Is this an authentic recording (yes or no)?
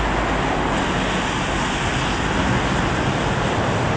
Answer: yes